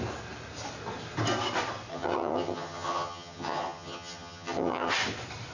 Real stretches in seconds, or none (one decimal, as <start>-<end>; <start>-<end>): 0.0-1.9; 4.9-5.5